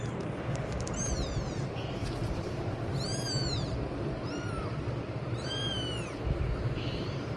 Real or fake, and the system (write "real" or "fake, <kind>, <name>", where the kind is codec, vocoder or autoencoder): fake, vocoder, BigVGAN v2